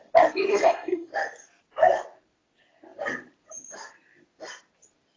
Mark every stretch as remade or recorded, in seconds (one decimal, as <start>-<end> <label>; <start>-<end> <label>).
0.0-0.5 recorded; 0.5-1.1 remade; 1.1-5.2 recorded